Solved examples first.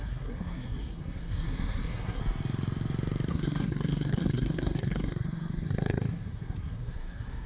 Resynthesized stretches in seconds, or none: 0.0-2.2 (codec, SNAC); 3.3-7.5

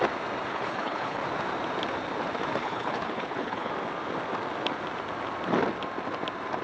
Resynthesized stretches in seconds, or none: 0.5-1.2 (codec, HILCodec); 2.6-3.7